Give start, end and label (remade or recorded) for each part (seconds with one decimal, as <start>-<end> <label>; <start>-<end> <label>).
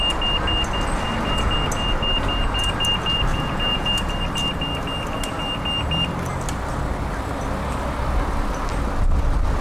0.0-3.3 recorded; 3.3-4.0 remade; 4.0-9.6 recorded